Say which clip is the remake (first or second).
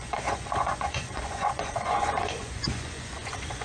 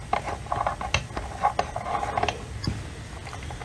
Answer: first